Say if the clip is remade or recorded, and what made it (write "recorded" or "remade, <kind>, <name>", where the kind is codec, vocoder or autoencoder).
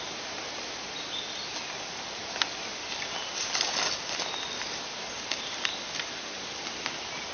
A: recorded